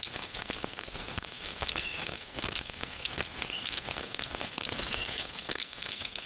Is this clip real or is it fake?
fake